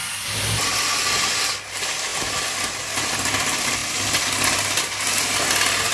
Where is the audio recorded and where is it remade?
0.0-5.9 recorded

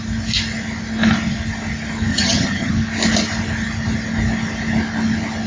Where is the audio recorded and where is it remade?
0.0-2.1 recorded; 2.1-2.7 remade; 2.7-5.5 recorded

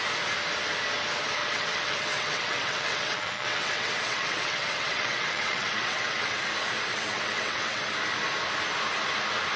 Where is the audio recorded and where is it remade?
0.0-1.4 recorded; 1.4-6.5 remade; 6.5-6.9 recorded; 6.9-7.8 remade; 7.8-9.6 recorded

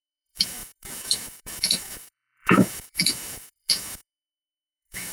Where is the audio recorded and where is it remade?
0.0-5.1 remade

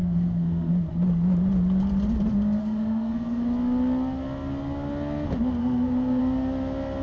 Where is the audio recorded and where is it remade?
0.0-0.7 remade; 0.7-2.6 recorded; 2.6-3.4 remade; 3.4-5.6 recorded; 5.6-6.2 remade; 6.2-7.0 recorded

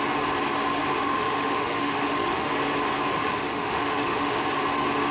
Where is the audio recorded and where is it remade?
0.0-1.0 recorded; 1.0-2.5 remade; 2.5-3.1 recorded; 3.1-4.4 remade; 4.4-5.1 recorded

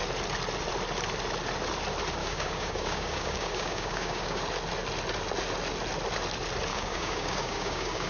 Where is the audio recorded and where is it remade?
0.0-2.2 recorded; 2.2-4.4 remade; 4.4-6.7 recorded; 6.7-8.1 remade